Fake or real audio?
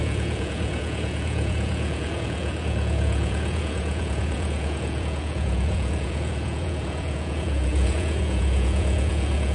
fake